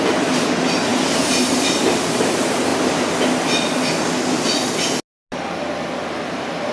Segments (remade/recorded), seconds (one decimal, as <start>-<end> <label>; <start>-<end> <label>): 0.0-2.7 remade; 2.7-6.3 recorded; 6.3-6.7 remade